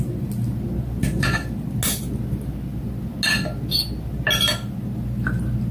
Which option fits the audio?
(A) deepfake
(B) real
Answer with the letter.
B